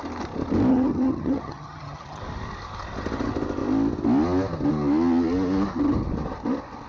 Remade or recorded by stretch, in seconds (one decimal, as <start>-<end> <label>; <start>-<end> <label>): 0.0-0.7 recorded; 0.7-2.2 remade; 2.2-6.9 recorded